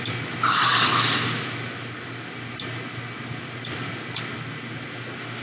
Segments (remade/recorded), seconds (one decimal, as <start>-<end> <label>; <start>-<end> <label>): 0.0-5.4 recorded